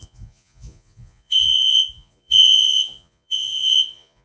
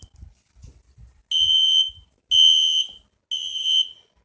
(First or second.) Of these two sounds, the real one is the second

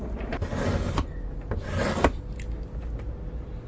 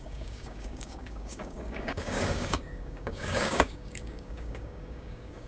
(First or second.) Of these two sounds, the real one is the first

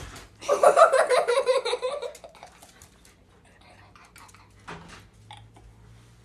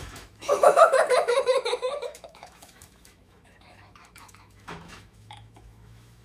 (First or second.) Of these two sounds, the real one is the first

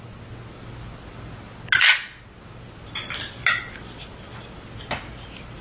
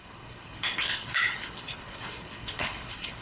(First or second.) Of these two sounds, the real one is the first